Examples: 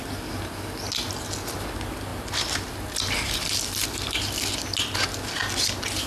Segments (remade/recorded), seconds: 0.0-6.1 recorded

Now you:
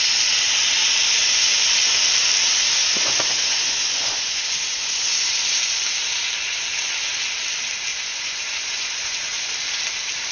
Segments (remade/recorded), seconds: 0.0-1.2 recorded; 1.2-1.7 remade; 1.7-2.8 recorded; 2.8-5.0 remade; 5.0-7.9 recorded; 7.9-9.5 remade; 9.5-10.3 recorded

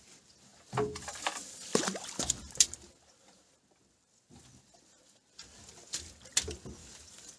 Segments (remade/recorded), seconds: 0.0-7.4 recorded